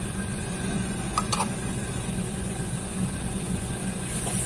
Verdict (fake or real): fake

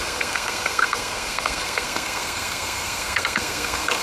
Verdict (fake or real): fake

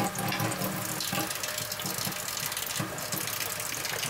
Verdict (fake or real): real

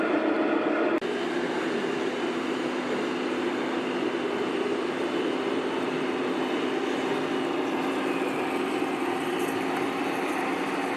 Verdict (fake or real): real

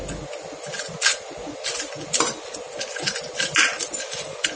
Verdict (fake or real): real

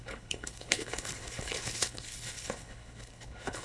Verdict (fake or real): fake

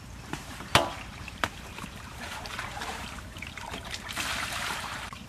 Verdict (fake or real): fake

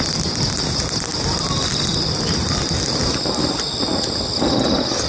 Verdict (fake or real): real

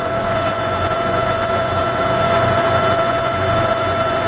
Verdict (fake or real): fake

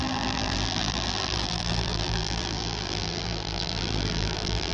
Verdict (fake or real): fake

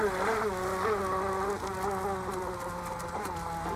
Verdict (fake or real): real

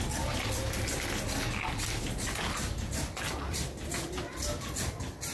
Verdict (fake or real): real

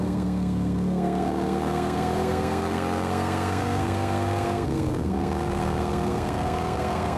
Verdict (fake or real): fake